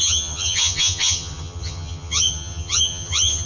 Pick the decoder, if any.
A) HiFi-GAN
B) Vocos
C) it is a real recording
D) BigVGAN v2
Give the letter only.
A